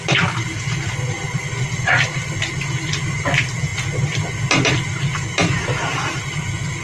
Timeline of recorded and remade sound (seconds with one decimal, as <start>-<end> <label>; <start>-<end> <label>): 0.0-6.8 recorded